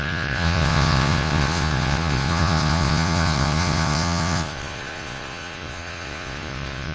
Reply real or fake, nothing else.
fake